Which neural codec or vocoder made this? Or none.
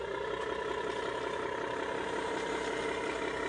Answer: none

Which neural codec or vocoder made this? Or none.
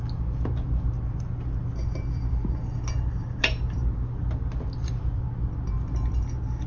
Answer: none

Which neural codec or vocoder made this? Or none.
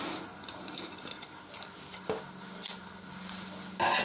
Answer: none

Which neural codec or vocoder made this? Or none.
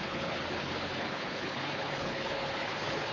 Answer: codec, HILCodec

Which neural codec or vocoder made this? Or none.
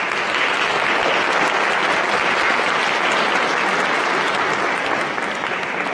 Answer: none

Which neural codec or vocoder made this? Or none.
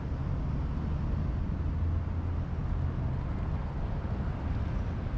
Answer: none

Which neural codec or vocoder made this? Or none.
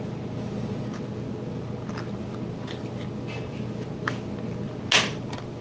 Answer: none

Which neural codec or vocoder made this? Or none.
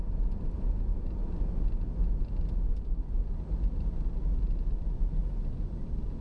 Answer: none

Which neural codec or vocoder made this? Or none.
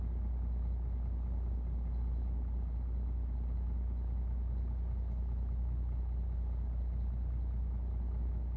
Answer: none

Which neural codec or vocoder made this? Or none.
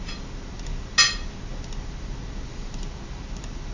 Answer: none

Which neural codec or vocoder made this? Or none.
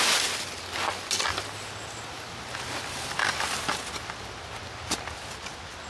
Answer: none